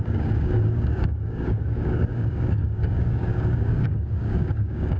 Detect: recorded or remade remade